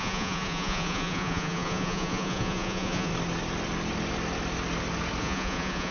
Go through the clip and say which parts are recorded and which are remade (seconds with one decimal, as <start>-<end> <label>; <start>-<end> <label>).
0.0-3.1 remade; 3.1-5.2 recorded; 5.2-5.9 remade

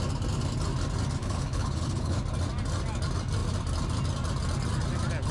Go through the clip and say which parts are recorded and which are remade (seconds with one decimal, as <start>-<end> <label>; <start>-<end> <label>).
0.0-1.2 recorded; 1.2-2.2 remade; 2.2-5.3 recorded

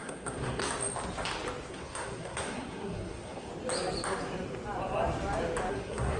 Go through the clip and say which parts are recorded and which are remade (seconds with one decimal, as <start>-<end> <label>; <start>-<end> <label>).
0.0-0.6 remade; 0.6-1.7 recorded; 1.7-3.5 remade; 3.5-5.7 recorded; 5.7-6.2 remade

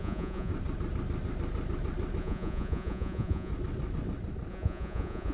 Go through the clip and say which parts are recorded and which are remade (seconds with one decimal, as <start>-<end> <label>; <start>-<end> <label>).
0.0-0.5 remade; 0.5-2.2 recorded; 2.2-3.5 remade; 3.5-4.5 recorded; 4.5-5.3 remade